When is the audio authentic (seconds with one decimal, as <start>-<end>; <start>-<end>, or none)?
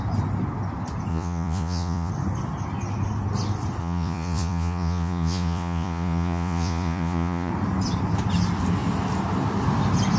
0.0-1.1; 2.1-3.8; 7.5-10.2